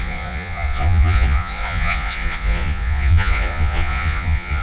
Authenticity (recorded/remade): remade